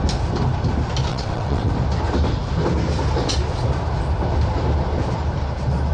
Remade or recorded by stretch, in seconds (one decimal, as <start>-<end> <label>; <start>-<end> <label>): 0.0-1.1 recorded; 1.1-1.7 remade; 1.7-5.9 recorded